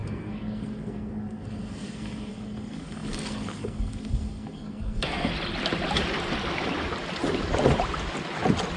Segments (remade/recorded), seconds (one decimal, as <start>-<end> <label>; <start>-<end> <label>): 0.0-5.3 remade; 5.3-8.8 recorded